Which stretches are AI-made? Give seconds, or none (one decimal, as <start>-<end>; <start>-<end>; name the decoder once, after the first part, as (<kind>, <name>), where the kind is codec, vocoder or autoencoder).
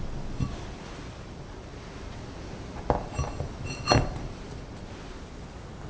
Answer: none